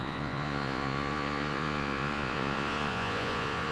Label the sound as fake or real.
fake